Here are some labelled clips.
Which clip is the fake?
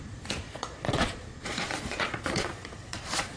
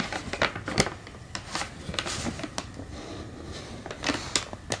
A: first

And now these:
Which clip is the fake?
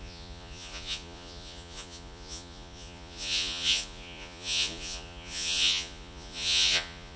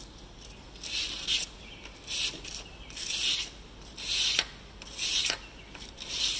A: first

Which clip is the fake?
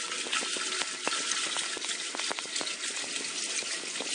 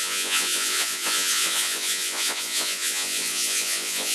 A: second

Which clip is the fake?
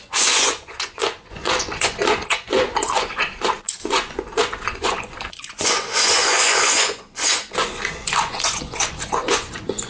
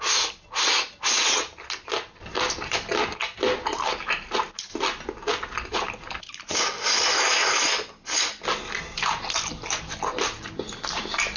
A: first